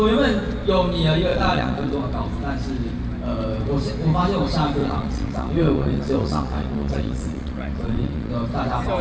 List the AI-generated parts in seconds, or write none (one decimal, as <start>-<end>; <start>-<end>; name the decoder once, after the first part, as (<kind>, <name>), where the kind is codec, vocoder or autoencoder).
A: 1.3-2.0 (vocoder, Vocos); 4.8-8.3